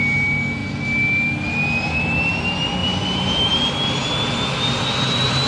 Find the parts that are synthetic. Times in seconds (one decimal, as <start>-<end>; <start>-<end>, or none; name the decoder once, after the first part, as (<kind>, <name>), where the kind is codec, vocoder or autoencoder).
2.8-3.6 (vocoder, BigVGAN v2)